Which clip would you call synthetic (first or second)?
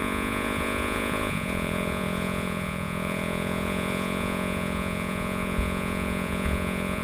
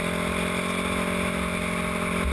first